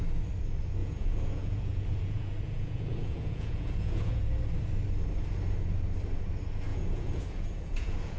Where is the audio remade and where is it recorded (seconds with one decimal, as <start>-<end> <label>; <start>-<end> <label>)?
0.0-0.8 recorded; 0.8-4.2 remade; 4.2-6.7 recorded; 6.7-8.2 remade

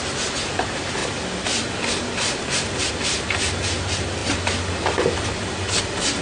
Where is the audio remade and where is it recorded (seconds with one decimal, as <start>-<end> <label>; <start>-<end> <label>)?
0.0-6.2 recorded

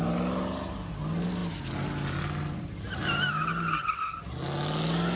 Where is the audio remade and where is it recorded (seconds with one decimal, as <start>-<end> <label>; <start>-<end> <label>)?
0.0-5.2 recorded

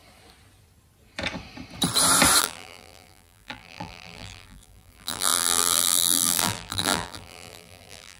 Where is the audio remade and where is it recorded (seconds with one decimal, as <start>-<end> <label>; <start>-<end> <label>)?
0.0-2.4 recorded; 2.4-8.2 remade

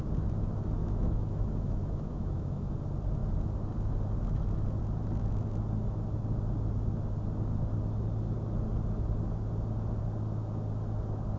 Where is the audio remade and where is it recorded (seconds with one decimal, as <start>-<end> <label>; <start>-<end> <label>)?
0.0-0.8 recorded; 0.8-2.7 remade; 2.7-11.4 recorded

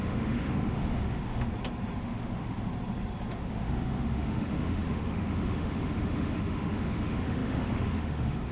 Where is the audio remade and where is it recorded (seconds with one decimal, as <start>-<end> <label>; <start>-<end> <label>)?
0.0-1.5 remade; 1.5-2.0 recorded; 2.0-2.7 remade; 2.7-3.3 recorded; 3.3-8.5 remade